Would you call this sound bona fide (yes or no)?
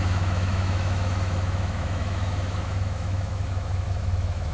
no